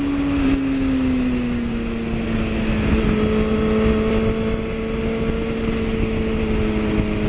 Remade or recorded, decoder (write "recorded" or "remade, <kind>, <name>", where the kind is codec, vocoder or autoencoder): recorded